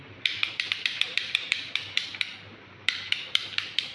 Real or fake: fake